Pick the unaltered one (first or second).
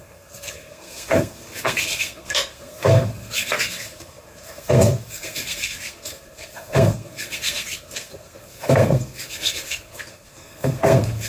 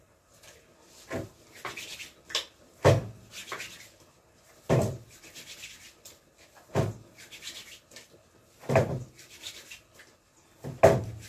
second